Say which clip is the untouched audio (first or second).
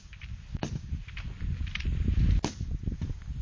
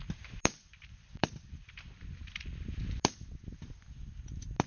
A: first